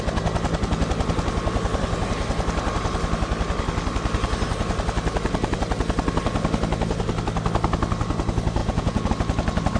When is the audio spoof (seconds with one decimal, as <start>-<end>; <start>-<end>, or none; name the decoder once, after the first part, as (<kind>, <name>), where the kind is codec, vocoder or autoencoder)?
8.6-9.1 (vocoder, Vocos)